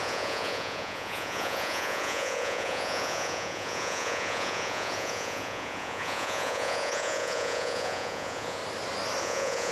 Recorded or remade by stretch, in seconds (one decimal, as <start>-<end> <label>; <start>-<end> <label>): 0.0-8.6 remade; 8.6-9.2 recorded; 9.2-9.7 remade

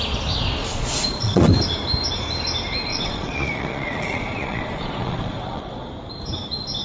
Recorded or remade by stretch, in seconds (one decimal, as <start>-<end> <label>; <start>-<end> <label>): 0.0-0.6 recorded; 0.6-1.5 remade; 1.5-2.9 recorded; 2.9-5.9 remade; 5.9-6.8 recorded

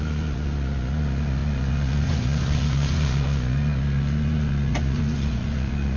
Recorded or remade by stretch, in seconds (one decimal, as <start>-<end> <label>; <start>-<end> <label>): 0.0-6.0 remade

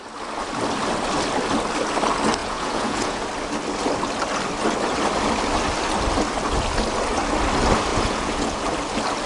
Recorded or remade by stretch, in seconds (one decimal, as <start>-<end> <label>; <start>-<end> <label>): 0.0-2.4 recorded; 2.4-3.3 remade; 3.3-7.9 recorded; 7.9-8.6 remade; 8.6-9.3 recorded

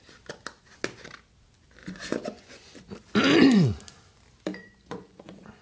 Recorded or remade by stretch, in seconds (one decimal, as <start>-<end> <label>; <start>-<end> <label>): 0.0-1.8 recorded; 1.8-2.7 remade; 2.7-4.5 recorded; 4.5-5.6 remade

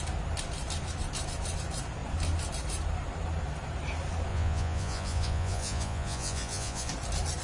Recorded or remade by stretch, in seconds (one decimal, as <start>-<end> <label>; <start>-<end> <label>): 0.0-4.3 recorded; 4.3-6.9 remade; 6.9-7.4 recorded

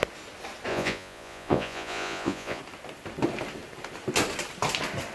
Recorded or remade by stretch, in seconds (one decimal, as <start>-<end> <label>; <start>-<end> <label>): 0.0-0.7 recorded; 0.7-2.6 remade; 2.6-5.1 recorded

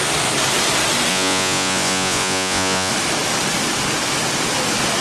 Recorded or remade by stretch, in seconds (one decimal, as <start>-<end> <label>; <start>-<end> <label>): 0.0-1.1 recorded; 1.1-2.9 remade; 2.9-5.0 recorded